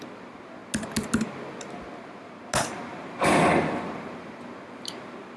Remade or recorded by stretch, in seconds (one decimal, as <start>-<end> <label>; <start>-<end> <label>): 0.0-5.4 recorded